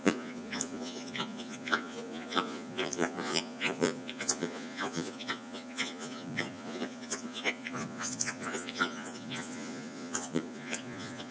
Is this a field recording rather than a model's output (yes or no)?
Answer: no